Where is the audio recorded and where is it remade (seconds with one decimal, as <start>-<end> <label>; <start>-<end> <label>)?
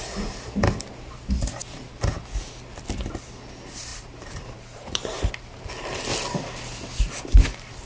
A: 0.0-3.9 recorded; 3.9-5.3 remade; 5.3-7.9 recorded